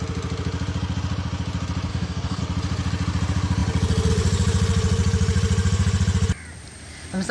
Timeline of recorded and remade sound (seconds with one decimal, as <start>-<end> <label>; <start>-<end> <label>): 0.0-1.9 recorded; 1.9-2.4 remade; 2.4-7.3 recorded